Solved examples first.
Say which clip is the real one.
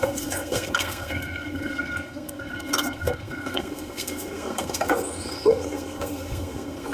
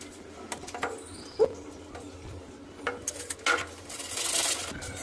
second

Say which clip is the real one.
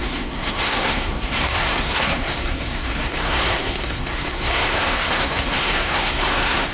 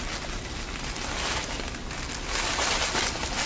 second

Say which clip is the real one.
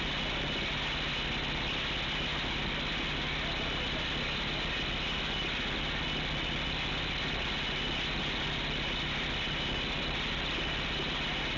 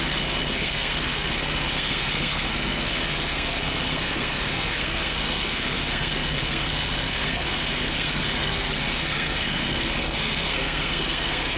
first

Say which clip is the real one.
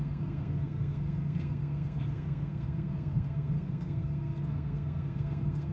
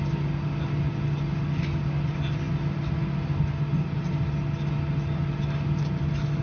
second